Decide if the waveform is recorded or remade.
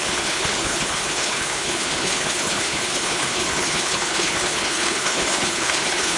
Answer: remade